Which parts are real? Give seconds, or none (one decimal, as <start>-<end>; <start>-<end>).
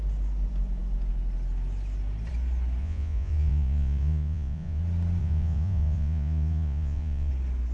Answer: 0.0-2.8; 4.8-5.2; 7.3-7.7